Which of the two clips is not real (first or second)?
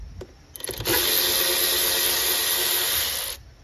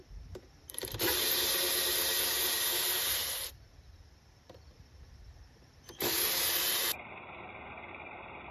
second